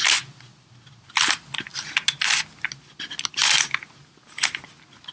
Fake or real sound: real